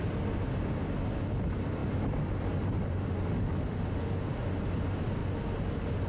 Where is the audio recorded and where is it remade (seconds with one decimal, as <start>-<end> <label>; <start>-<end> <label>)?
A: 0.0-6.1 recorded